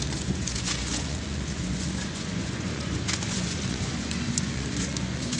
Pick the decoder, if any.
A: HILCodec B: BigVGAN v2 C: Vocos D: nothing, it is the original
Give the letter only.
C